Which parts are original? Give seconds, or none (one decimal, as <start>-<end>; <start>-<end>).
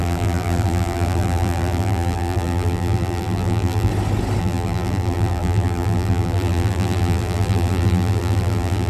3.9-4.4